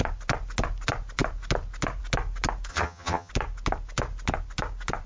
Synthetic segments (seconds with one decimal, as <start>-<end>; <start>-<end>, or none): 2.7-3.3